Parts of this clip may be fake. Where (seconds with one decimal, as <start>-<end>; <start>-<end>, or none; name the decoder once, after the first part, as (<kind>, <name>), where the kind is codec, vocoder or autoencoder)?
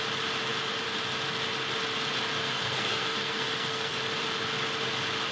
2.4-4.0 (codec, SNAC)